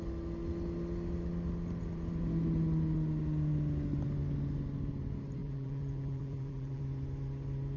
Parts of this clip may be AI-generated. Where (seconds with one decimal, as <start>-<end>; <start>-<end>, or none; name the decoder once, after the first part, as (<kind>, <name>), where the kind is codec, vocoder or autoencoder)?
5.4-6.8 (vocoder, BigVGAN v2)